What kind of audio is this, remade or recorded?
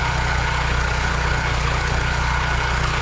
remade